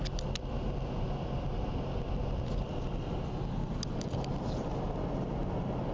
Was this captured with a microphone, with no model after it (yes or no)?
yes